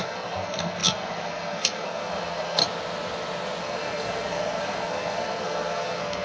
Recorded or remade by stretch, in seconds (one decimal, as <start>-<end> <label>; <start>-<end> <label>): 0.0-2.6 remade; 2.6-3.6 recorded; 3.6-6.2 remade